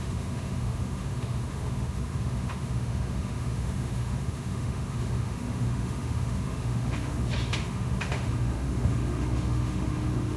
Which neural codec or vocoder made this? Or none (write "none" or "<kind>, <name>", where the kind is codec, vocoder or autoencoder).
autoencoder, DAC-VAE